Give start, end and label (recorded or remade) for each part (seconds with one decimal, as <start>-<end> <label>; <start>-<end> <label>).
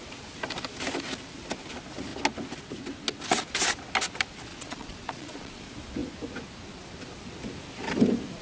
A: 0.0-4.5 recorded; 4.5-5.6 remade; 5.6-8.4 recorded